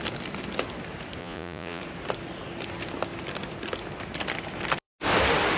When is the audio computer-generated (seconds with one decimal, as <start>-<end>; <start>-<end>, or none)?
1.2-1.8